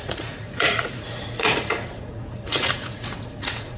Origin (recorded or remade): remade